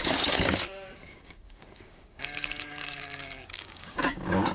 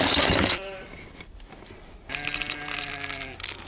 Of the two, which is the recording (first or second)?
second